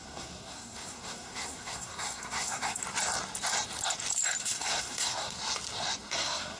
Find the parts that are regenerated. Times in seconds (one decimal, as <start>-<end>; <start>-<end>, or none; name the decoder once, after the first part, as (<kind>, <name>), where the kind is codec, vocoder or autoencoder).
0.0-2.8 (codec, SNAC); 4.4-5.4; 6.1-6.6